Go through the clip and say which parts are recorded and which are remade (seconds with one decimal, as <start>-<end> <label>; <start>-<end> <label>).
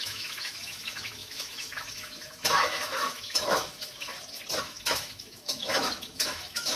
0.0-4.1 remade; 4.1-4.6 recorded; 4.6-6.8 remade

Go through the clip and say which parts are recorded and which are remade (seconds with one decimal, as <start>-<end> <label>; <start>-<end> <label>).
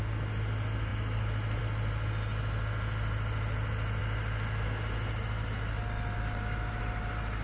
0.0-7.4 recorded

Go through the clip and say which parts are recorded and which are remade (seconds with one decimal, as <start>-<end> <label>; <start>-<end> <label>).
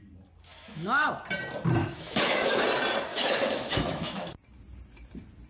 0.0-0.5 recorded; 0.5-1.1 remade; 1.1-1.8 recorded; 1.8-2.6 remade; 2.6-3.1 recorded; 3.1-4.3 remade; 4.3-5.5 recorded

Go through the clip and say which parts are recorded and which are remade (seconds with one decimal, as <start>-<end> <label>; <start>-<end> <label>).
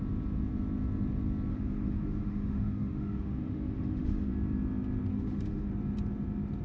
0.0-1.5 recorded; 1.5-4.3 remade; 4.3-5.1 recorded; 5.1-5.7 remade; 5.7-6.6 recorded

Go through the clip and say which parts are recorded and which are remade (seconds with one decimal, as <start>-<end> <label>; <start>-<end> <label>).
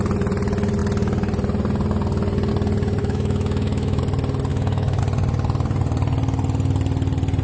0.0-3.0 recorded; 3.0-4.0 remade; 4.0-4.5 recorded; 4.5-5.0 remade; 5.0-7.4 recorded